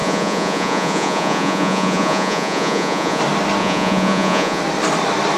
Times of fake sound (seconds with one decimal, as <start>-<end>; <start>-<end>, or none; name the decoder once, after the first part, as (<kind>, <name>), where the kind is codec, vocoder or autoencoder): 0.0-3.2 (vocoder, Vocos); 3.6-4.6